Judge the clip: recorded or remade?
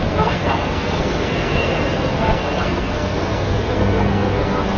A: remade